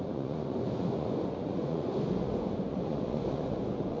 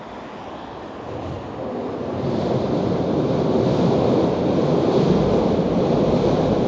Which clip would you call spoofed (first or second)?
first